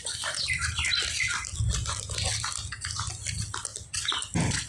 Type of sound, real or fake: real